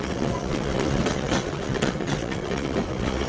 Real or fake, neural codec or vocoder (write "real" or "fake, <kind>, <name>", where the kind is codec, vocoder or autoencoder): fake, vocoder, WaveNeXt